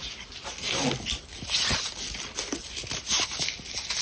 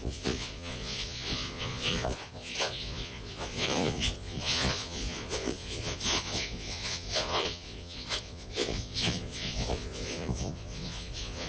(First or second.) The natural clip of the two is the first